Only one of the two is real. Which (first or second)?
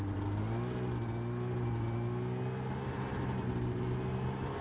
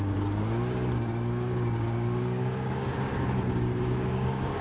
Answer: first